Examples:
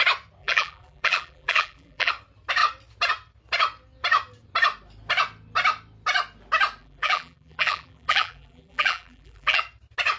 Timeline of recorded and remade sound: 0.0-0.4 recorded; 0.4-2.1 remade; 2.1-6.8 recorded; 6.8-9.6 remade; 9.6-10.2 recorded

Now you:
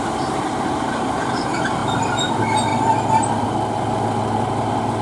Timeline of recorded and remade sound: 0.0-5.0 recorded

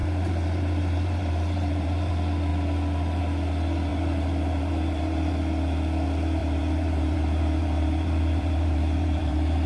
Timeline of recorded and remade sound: 0.0-2.1 remade; 2.1-3.9 recorded; 3.9-5.3 remade; 5.3-6.4 recorded; 6.4-9.7 remade

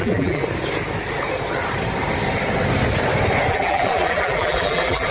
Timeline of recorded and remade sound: 0.0-0.4 remade; 0.4-3.5 recorded; 3.5-5.1 remade

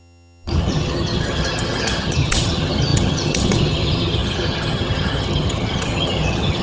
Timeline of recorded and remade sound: 0.0-6.6 remade

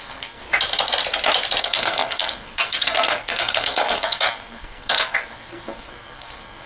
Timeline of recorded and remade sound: 0.0-0.4 remade; 0.4-1.6 recorded; 1.6-6.7 remade